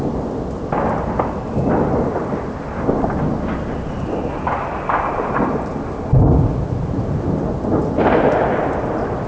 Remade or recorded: recorded